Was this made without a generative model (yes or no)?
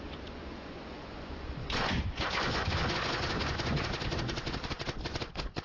no